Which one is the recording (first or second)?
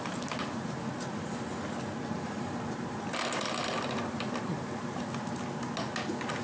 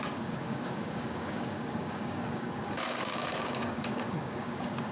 first